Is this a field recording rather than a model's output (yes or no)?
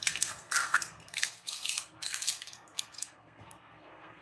no